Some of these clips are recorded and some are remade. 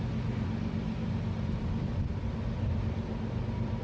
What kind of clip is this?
recorded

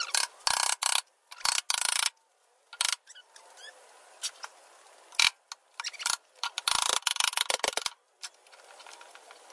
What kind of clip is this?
recorded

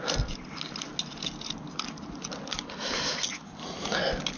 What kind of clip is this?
recorded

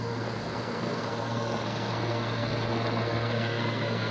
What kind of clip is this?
remade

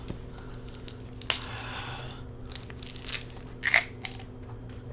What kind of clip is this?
recorded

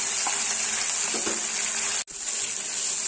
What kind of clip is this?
recorded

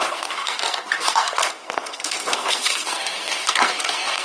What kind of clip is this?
remade